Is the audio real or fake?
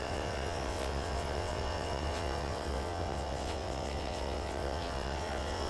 fake